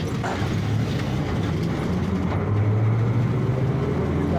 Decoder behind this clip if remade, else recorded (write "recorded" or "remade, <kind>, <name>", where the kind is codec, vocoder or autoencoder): recorded